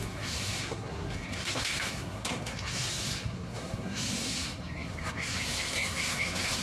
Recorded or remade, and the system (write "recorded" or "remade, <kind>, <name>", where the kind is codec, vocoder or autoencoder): remade, codec, SNAC